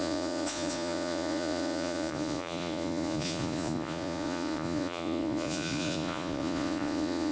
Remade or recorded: remade